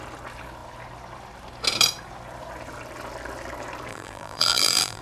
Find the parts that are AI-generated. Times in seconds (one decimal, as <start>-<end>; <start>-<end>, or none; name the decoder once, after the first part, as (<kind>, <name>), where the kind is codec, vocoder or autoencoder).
3.9-5.0 (vocoder, BigVGAN v2)